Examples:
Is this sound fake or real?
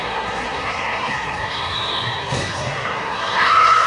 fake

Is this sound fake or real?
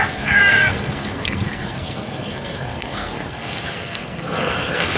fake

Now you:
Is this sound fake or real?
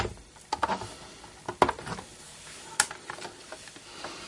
real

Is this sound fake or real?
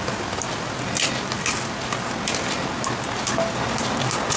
real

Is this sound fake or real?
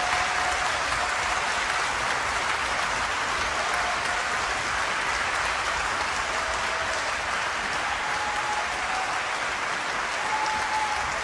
real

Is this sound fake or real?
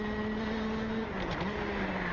real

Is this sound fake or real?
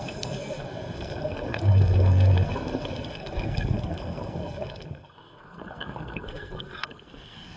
fake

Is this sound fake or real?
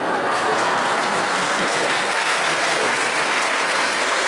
fake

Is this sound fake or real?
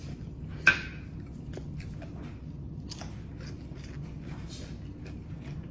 real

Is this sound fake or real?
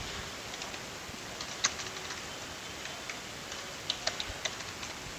real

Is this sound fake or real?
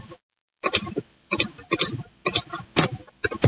real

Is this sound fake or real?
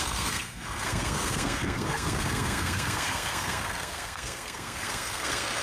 fake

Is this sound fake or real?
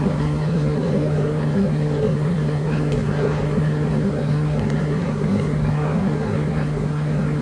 fake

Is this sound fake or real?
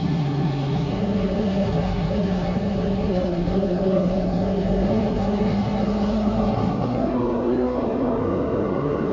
fake